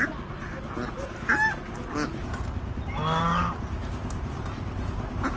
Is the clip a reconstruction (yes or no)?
no